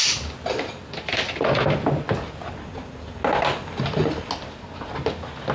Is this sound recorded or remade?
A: recorded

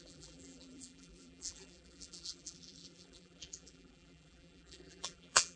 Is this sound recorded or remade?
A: remade